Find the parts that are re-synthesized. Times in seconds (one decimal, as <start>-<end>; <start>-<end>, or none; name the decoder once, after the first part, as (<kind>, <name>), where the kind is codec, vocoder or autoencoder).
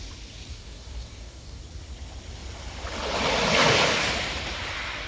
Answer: 0.5-1.6 (codec, DAC)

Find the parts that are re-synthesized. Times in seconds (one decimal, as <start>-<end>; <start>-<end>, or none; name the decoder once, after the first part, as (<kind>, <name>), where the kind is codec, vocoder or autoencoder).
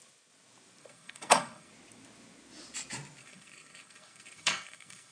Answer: 0.8-1.7 (codec, SNAC); 3.2-5.1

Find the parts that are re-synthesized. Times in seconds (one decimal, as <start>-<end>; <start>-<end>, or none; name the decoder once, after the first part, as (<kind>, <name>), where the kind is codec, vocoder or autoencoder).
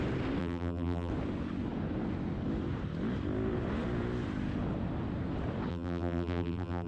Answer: 0.4-1.1 (vocoder, BigVGAN v2); 5.7-6.9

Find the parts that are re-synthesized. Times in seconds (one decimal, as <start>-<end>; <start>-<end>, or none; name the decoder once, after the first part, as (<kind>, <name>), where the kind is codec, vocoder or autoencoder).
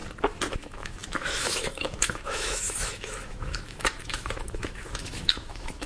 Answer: 0.5-5.9 (autoencoder, DAC-VAE)